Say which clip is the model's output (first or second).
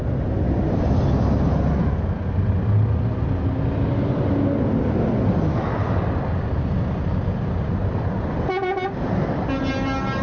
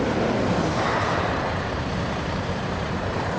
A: second